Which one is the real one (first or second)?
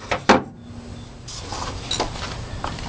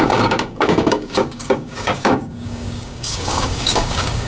first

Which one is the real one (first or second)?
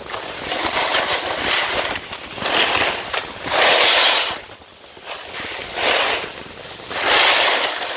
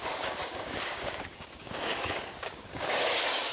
first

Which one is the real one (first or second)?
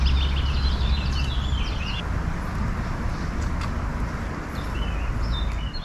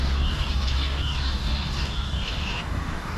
first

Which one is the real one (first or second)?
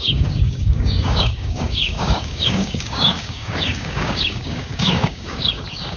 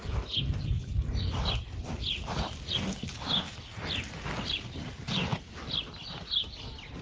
second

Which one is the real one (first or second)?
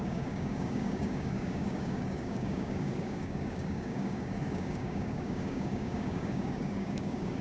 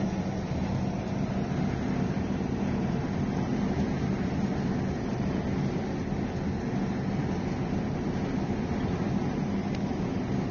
second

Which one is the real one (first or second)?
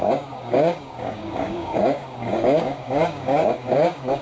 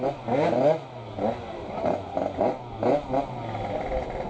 second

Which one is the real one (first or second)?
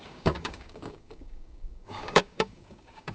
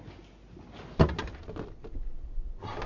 second